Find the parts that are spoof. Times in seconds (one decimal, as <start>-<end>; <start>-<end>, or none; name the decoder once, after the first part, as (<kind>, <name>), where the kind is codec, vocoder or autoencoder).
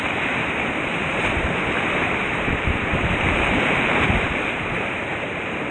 2.2-4.7 (vocoder, BigVGAN v2)